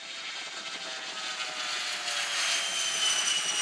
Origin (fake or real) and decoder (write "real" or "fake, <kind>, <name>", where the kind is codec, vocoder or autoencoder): real